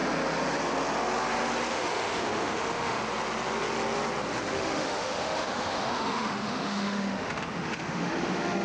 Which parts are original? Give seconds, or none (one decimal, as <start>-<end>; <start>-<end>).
0.0-1.7; 3.0-4.5